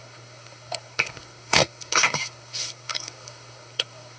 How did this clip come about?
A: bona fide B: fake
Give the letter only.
B